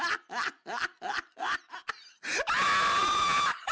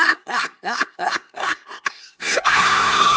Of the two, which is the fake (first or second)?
second